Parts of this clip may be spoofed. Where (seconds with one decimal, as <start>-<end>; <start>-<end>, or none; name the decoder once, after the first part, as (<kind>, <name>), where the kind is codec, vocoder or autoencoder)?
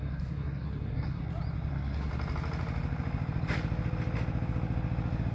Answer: 0.0-1.2 (codec, SNAC); 1.7-2.1